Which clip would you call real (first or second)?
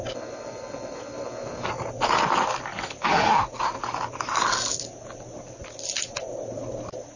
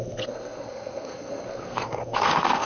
first